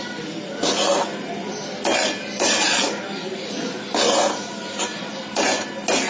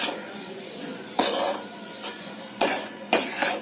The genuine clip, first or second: first